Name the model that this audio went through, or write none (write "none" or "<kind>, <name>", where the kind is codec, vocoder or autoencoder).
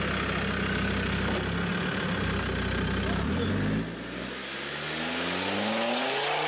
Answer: none